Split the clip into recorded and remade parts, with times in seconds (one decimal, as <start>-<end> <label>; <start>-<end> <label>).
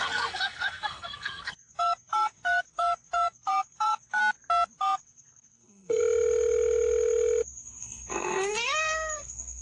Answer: 0.0-4.2 remade; 4.2-4.8 recorded; 4.8-6.0 remade; 6.0-7.8 recorded; 7.8-9.6 remade